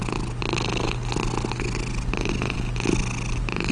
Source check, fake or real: real